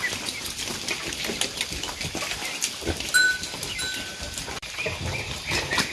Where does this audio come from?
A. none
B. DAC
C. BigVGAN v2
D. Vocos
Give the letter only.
A